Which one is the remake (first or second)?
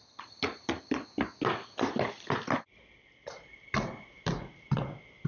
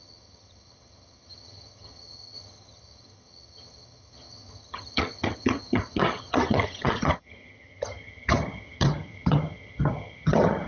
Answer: second